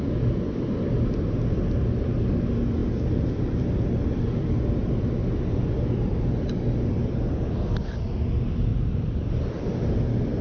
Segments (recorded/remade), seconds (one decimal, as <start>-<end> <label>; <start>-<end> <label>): 0.0-8.7 recorded; 8.7-9.3 remade; 9.3-10.4 recorded

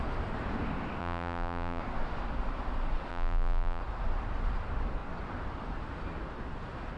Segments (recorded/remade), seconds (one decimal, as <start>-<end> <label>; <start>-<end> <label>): 0.0-1.0 recorded; 1.0-1.8 remade; 1.8-3.1 recorded; 3.1-3.8 remade; 3.8-7.0 recorded

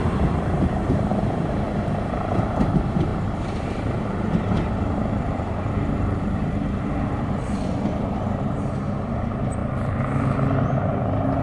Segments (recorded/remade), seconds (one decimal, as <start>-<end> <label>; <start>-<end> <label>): 0.0-9.6 remade; 9.6-10.9 recorded; 10.9-11.4 remade